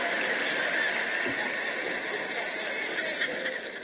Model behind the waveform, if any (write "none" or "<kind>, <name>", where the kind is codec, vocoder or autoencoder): none